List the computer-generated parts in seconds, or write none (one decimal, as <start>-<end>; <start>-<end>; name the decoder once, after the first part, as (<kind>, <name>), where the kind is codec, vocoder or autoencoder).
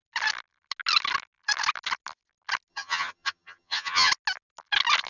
2.7-4.1 (vocoder, HiFi-GAN)